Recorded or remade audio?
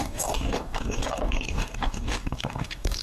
remade